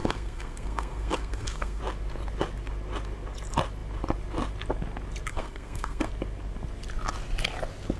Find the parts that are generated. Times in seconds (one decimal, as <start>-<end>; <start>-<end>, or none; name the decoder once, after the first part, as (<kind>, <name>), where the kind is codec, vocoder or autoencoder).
0.0-1.8 (codec, SNAC); 5.3-6.1